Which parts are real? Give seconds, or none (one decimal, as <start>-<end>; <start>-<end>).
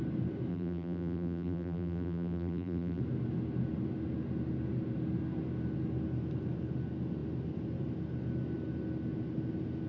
0.0-0.5; 3.0-9.9